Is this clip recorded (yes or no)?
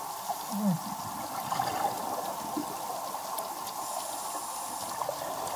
yes